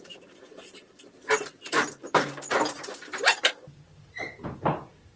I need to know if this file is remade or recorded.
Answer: remade